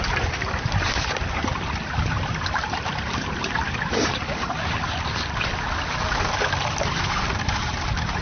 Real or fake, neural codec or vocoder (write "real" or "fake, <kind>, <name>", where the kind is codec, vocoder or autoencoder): fake, vocoder, BigVGAN v2